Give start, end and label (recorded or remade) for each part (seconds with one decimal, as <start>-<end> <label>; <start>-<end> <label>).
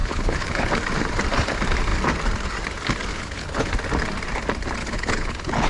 0.0-0.7 remade; 0.7-3.1 recorded; 3.1-3.7 remade; 3.7-4.8 recorded; 4.8-5.7 remade